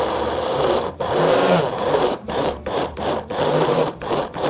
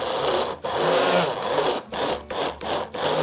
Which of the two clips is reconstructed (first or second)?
first